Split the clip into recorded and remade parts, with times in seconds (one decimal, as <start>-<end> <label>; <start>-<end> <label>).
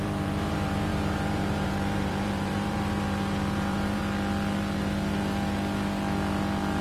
0.0-4.0 remade; 4.0-6.8 recorded